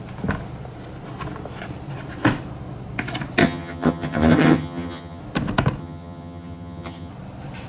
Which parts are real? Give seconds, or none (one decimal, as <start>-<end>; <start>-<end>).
0.0-3.4; 5.2-5.8; 7.1-7.7

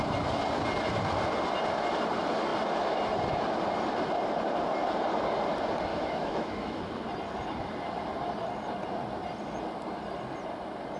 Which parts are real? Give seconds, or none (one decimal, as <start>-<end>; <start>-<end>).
0.0-5.9; 6.8-11.0

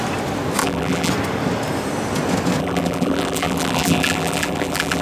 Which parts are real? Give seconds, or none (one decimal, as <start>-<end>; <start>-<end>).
0.0-0.6; 1.1-2.6

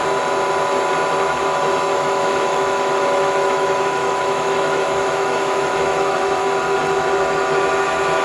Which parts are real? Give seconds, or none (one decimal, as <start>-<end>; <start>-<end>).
0.0-1.9; 6.4-8.2

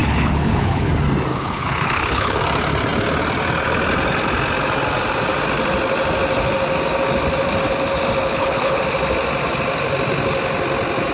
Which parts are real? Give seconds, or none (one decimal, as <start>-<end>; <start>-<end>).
0.9-1.3; 2.4-8.2; 8.8-11.1

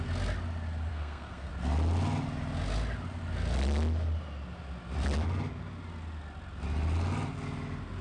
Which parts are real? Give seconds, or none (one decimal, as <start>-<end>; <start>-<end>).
0.0-0.9; 1.5-8.0

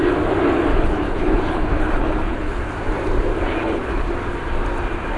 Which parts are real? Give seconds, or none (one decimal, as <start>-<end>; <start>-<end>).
0.0-0.7; 2.6-3.6; 4.1-5.2